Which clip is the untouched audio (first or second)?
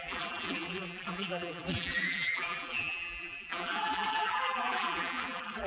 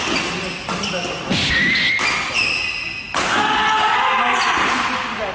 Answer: second